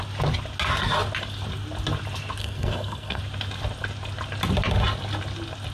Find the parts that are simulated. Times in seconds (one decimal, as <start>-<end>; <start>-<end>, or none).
2.4-3.2